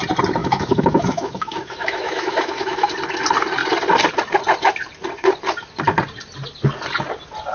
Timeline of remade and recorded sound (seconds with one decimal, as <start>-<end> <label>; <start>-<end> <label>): 0.0-0.4 recorded; 0.4-2.9 remade; 2.9-7.5 recorded